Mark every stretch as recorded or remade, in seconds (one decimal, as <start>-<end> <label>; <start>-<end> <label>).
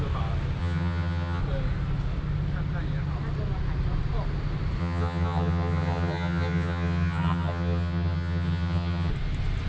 0.0-0.6 recorded; 0.6-1.4 remade; 1.4-4.8 recorded; 4.8-9.1 remade; 9.1-9.7 recorded